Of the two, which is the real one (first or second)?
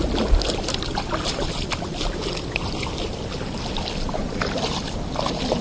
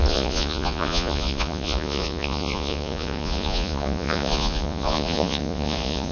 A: first